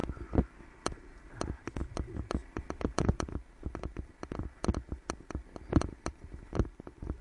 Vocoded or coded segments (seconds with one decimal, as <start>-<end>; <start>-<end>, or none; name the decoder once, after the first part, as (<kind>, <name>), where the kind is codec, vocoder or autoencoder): 1.8-4.7 (vocoder, BigVGAN v2); 5.3-7.2